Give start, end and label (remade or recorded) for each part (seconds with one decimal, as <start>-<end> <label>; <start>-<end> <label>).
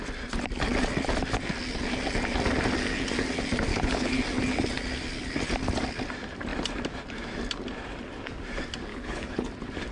0.0-3.7 recorded; 3.7-4.2 remade; 4.2-8.9 recorded; 8.9-9.5 remade; 9.5-9.9 recorded